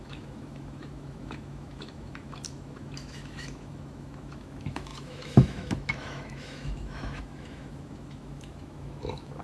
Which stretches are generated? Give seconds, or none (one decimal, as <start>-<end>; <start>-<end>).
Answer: 0.0-9.4